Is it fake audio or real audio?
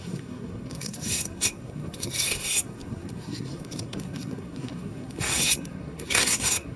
fake